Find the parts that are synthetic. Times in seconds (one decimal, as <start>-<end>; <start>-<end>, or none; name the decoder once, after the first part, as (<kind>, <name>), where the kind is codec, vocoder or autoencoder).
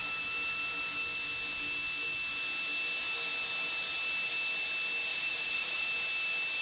5.1-5.9 (vocoder, Vocos)